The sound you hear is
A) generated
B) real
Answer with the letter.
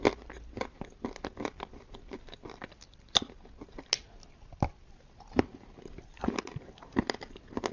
B